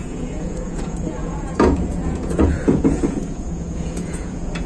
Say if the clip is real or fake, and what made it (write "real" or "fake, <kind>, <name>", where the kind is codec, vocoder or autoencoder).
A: fake, vocoder, Vocos